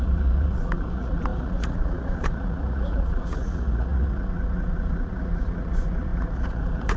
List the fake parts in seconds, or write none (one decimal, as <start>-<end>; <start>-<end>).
0.0-7.0

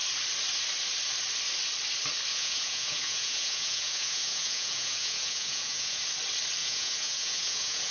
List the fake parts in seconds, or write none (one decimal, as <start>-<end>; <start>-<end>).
2.3-6.0; 6.6-7.9